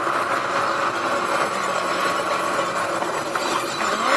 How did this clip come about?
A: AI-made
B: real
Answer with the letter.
B